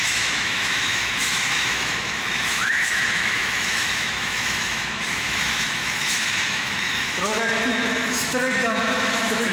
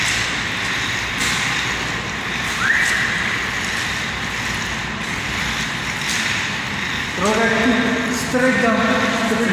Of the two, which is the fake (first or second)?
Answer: first